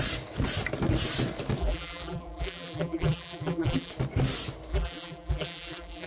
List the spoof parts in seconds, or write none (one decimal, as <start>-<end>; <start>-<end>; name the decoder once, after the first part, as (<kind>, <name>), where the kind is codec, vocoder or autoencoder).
1.6-3.9 (vocoder, BigVGAN v2); 4.7-6.1